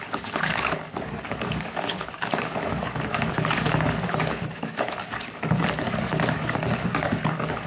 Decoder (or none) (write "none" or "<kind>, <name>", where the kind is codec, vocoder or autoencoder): codec, DAC